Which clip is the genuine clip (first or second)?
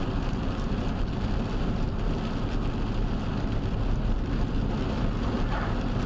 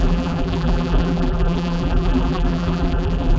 first